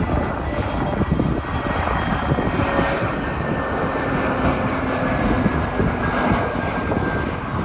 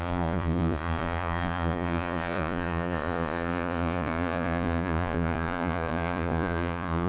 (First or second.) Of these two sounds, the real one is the first